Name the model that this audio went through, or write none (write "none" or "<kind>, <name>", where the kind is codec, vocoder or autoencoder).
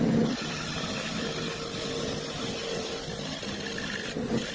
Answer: none